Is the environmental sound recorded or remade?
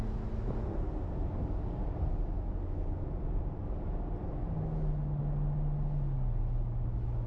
recorded